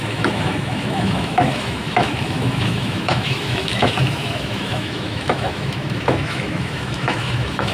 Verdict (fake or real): fake